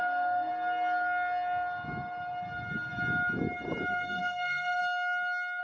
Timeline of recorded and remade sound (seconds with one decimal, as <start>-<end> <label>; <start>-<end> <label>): 0.0-0.5 remade; 0.5-3.9 recorded; 3.9-4.8 remade; 4.8-5.6 recorded